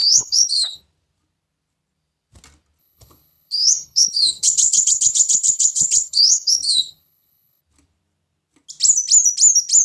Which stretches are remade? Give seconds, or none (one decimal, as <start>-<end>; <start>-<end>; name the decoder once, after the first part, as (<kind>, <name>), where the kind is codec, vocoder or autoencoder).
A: 0.0-0.8 (codec, HILCodec); 2.8-7.6